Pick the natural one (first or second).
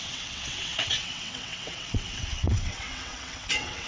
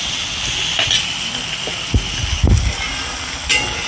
second